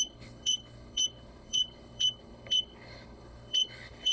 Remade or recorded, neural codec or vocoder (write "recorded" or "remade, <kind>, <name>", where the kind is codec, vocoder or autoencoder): remade, codec, HILCodec